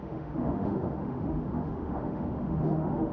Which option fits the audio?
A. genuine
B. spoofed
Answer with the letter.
B